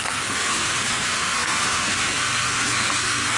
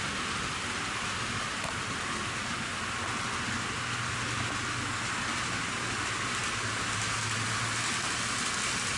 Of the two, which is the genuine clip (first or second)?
second